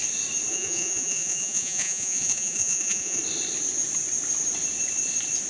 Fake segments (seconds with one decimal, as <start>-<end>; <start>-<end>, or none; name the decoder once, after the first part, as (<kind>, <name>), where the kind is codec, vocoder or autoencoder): 0.5-3.2 (vocoder, Vocos)